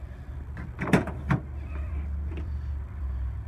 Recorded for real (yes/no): no